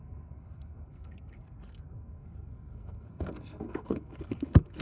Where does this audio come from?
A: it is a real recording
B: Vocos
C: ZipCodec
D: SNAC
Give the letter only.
D